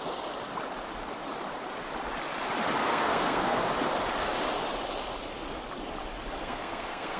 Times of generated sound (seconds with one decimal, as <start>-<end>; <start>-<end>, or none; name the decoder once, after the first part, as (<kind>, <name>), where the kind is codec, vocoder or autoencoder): 2.8-3.7 (codec, SNAC); 6.4-7.2